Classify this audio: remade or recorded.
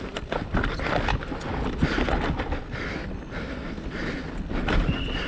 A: recorded